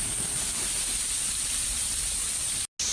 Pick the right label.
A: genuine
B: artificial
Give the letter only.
A